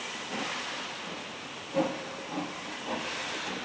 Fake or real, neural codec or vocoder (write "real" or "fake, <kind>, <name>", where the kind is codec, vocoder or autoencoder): real